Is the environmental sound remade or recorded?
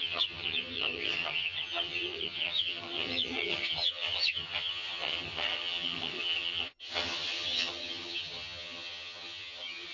remade